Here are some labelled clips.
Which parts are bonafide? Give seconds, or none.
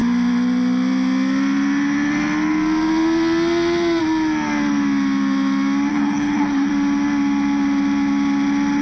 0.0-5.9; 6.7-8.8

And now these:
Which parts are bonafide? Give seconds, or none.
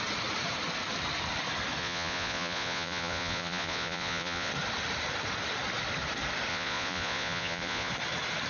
0.0-1.8; 4.5-6.5; 7.9-8.5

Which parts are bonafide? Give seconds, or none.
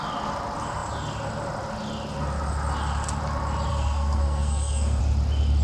0.0-3.7; 5.0-5.6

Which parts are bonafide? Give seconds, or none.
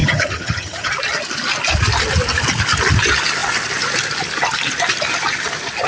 0.9-5.9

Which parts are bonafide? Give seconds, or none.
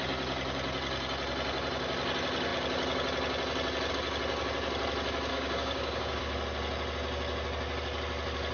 0.0-5.3; 6.2-8.5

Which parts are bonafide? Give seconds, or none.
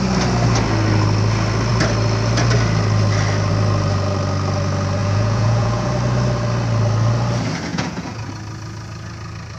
0.0-5.0; 5.9-7.7; 8.3-9.6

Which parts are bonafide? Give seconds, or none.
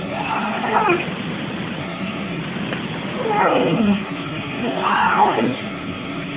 0.8-1.8; 2.4-3.4